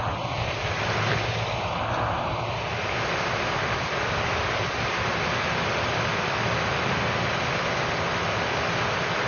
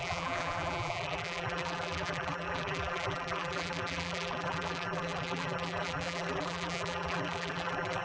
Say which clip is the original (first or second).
first